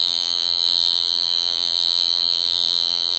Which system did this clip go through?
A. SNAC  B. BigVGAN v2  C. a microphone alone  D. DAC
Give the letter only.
B